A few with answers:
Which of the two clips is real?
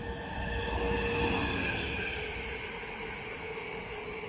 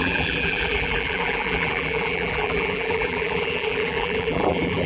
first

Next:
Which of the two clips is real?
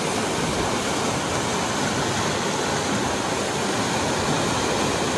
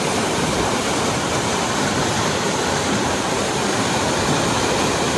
first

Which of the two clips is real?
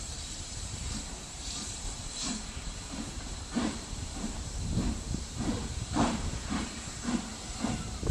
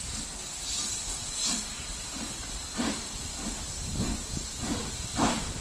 second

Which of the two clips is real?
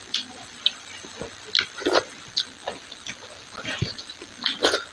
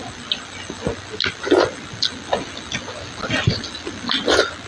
second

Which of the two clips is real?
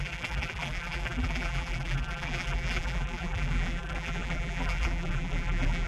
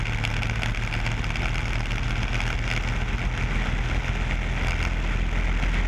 second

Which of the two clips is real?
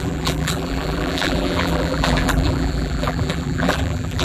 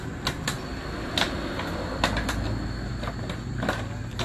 second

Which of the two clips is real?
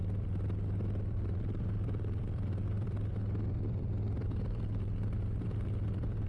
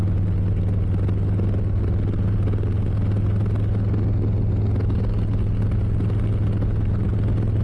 second